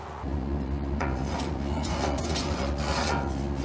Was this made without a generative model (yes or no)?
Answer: no